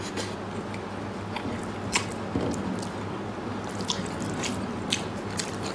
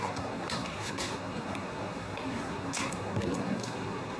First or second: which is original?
first